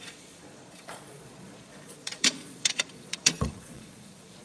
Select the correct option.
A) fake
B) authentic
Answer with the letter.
A